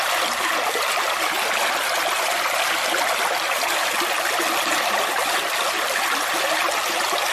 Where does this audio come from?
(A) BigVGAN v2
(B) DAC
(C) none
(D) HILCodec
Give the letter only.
C